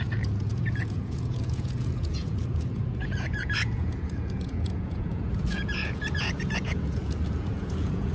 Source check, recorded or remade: remade